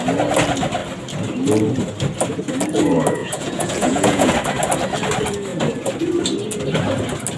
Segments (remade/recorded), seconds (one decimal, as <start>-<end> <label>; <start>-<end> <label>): 0.0-3.2 recorded; 3.2-4.3 remade; 4.3-7.4 recorded